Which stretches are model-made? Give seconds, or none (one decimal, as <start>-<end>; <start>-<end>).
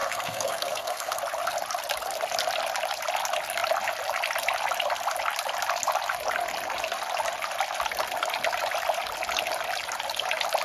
0.0-1.2